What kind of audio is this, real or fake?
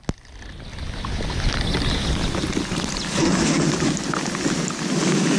real